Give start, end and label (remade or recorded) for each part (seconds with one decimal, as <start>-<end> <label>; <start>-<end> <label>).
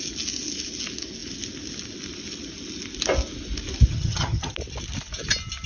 0.0-3.9 recorded; 3.9-4.5 remade; 4.5-5.7 recorded